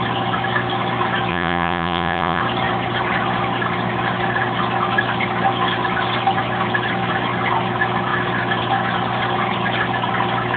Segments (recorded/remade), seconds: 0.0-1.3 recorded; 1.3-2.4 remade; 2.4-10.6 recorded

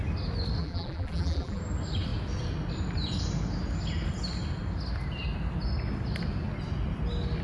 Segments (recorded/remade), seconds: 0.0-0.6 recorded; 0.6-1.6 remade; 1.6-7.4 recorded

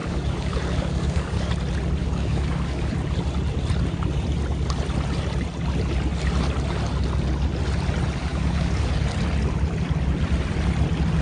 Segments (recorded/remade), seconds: 0.0-1.5 remade; 1.5-2.0 recorded; 2.0-2.9 remade; 2.9-8.3 recorded; 8.3-8.9 remade; 8.9-11.2 recorded